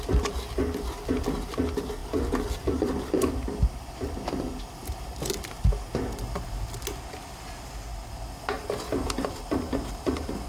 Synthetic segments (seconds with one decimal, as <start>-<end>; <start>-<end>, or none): none